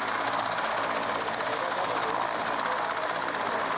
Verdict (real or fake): real